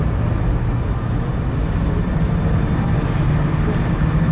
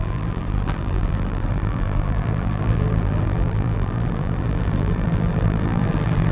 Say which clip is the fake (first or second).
second